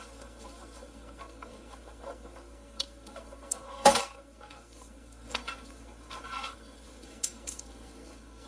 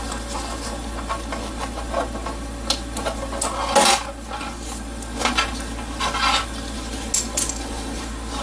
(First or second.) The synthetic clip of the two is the first